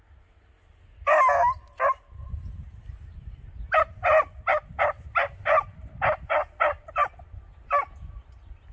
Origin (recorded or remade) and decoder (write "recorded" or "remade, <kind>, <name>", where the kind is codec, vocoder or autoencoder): recorded